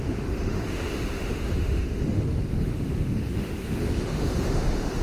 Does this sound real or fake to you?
fake